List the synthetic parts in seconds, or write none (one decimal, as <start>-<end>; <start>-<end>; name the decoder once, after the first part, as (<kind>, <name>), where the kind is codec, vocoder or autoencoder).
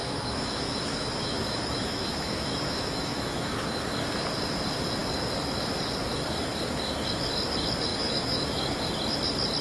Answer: 0.0-3.8 (autoencoder, DAC-VAE); 7.9-8.9